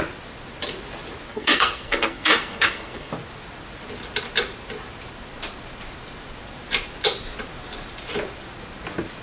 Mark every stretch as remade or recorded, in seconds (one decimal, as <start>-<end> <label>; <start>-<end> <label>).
0.0-1.3 recorded; 1.3-3.1 remade; 3.1-9.2 recorded